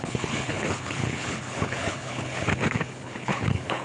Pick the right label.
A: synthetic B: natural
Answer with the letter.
A